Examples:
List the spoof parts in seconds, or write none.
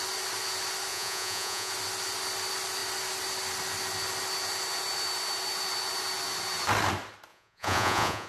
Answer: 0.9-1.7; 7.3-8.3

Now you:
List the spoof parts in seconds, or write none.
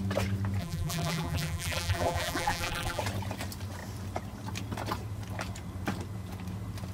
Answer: 0.6-3.0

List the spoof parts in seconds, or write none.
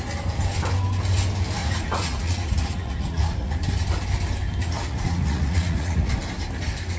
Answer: 1.6-3.6; 4.6-6.1